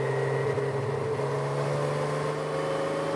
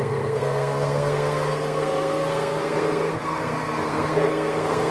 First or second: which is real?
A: first